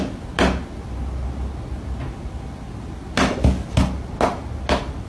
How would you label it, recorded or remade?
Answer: recorded